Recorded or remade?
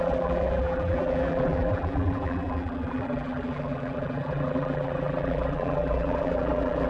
remade